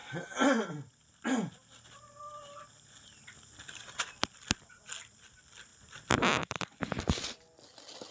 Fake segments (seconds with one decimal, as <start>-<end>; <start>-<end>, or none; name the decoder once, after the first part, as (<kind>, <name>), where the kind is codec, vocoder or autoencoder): none